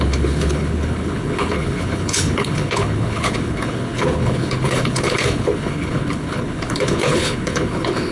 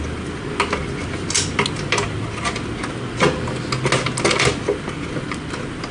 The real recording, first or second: second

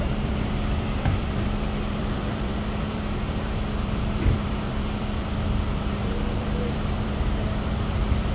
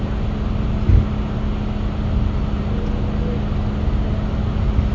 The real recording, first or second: second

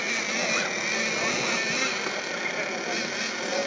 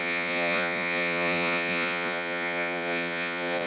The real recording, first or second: first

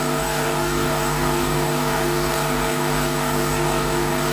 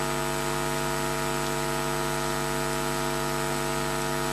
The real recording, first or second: second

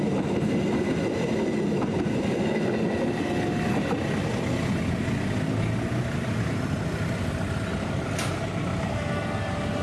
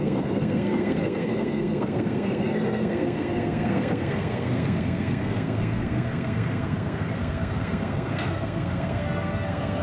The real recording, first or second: first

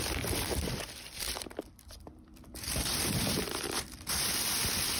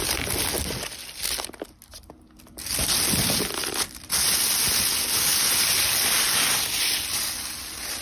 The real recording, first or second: second